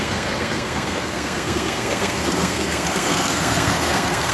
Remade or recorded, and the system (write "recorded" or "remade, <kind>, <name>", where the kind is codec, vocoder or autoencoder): remade, codec, SNAC